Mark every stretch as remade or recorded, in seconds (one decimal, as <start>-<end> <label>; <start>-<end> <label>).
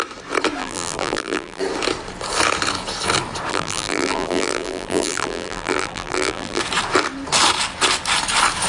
0.0-0.6 recorded; 0.6-1.6 remade; 1.6-3.5 recorded; 3.5-6.6 remade; 6.6-8.7 recorded